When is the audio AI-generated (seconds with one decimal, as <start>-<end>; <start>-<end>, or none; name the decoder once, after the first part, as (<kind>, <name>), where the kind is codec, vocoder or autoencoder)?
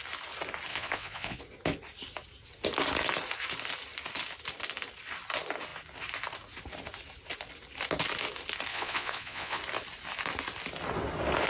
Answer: 0.7-1.4 (vocoder, Vocos); 8.7-9.6